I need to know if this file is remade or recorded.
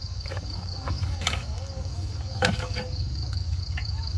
remade